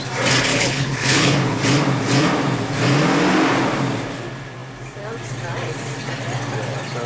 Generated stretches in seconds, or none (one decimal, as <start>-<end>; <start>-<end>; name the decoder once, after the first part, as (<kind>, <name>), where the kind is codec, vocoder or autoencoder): 0.5-1.6 (codec, HILCodec)